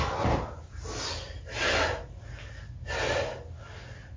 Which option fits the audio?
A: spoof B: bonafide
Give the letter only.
B